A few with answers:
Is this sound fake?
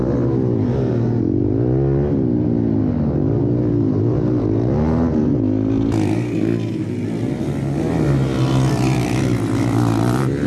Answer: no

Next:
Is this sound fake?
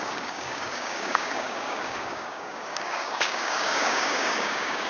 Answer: yes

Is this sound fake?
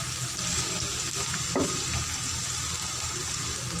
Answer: no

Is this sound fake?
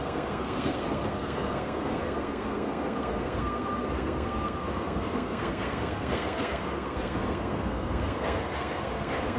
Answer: yes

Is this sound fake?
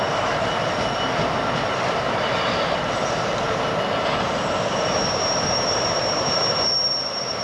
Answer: yes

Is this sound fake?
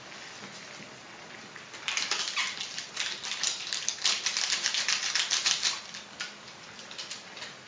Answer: no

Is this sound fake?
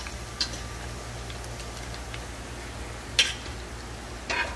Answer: no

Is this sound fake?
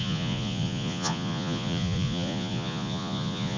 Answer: yes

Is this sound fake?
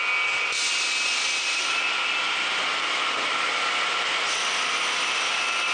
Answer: no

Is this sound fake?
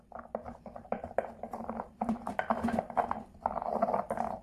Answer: yes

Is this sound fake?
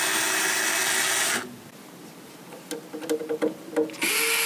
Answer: no